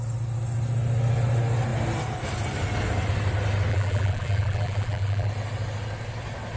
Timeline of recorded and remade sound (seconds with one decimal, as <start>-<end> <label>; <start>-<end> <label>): 0.0-3.7 recorded; 3.7-5.3 remade; 5.3-6.6 recorded